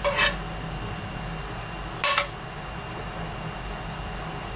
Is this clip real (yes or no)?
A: yes